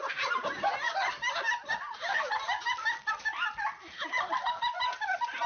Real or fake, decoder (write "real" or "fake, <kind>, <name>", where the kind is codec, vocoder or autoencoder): real